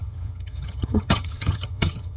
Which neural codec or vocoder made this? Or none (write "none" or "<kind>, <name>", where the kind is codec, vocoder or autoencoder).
vocoder, HiFi-GAN